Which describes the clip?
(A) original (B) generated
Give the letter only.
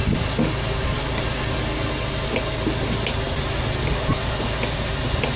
A